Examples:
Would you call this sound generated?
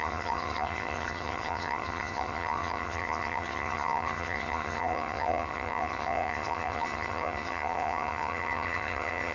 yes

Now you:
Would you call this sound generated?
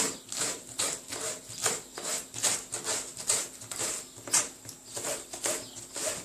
no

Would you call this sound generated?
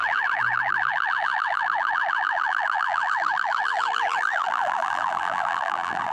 yes